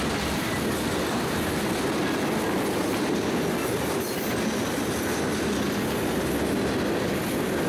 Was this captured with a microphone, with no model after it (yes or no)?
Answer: yes